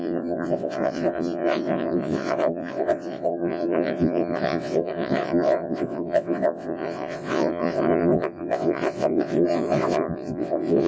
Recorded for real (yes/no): no